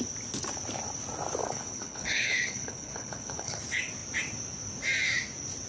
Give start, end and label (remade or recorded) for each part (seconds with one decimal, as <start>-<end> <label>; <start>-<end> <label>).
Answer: 0.0-1.4 recorded; 1.4-3.6 remade; 3.6-5.7 recorded